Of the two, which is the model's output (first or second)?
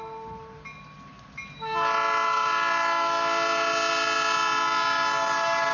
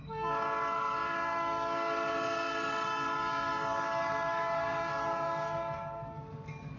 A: second